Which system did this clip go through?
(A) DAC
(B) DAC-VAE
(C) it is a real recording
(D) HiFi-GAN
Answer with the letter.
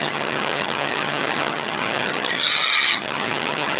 D